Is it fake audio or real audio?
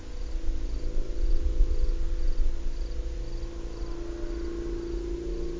real